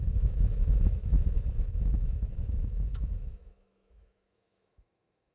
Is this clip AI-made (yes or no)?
yes